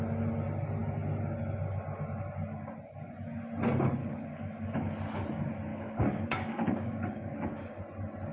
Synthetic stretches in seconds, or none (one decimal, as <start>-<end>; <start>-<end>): 4.0-4.9; 5.7-7.8